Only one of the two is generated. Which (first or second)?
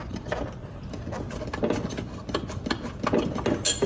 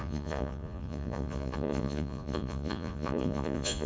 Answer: second